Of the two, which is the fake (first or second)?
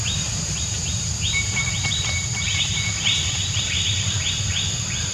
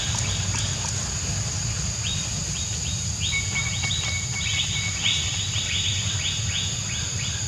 first